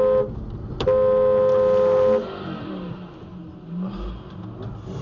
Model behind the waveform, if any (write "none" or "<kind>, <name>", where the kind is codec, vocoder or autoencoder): none